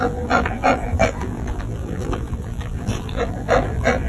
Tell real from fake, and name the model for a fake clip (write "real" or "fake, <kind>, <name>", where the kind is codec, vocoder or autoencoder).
fake, vocoder, BigVGAN v2